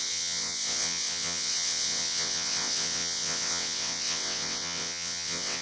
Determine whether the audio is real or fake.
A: fake